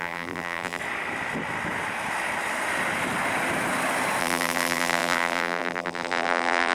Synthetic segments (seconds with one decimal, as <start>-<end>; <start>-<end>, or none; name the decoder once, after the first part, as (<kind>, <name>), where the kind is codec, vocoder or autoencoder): 0.0-0.8 (vocoder, BigVGAN v2); 4.2-6.7